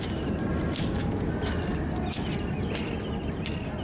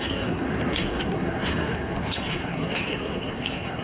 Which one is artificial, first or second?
second